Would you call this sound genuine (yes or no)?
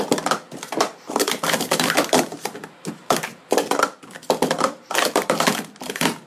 yes